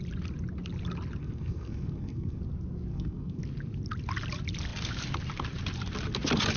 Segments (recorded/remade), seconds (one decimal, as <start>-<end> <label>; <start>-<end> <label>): 0.0-1.2 recorded; 1.2-2.4 remade; 2.4-2.9 recorded; 2.9-3.4 remade; 3.4-6.6 recorded